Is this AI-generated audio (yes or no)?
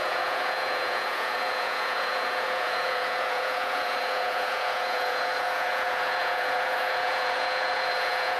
yes